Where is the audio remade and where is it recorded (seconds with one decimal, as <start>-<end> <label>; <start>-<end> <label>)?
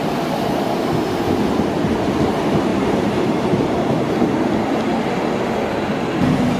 0.0-2.7 recorded; 2.7-4.1 remade; 4.1-6.6 recorded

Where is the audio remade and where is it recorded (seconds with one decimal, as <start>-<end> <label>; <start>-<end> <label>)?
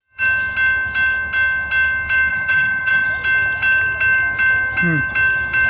0.0-2.3 recorded; 2.3-3.1 remade; 3.1-5.7 recorded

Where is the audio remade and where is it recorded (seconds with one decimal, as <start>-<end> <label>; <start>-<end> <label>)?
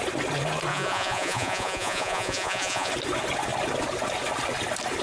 0.0-0.7 recorded; 0.7-2.9 remade; 2.9-5.0 recorded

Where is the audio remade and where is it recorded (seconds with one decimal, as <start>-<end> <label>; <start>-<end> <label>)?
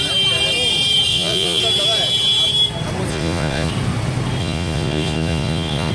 0.0-1.1 recorded; 1.1-1.6 remade; 1.6-3.1 recorded; 3.1-3.7 remade; 3.7-4.4 recorded; 4.4-5.9 remade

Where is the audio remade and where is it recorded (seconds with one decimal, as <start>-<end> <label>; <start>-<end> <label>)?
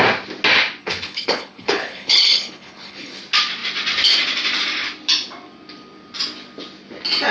0.0-0.8 recorded; 0.8-3.2 remade; 3.2-7.3 recorded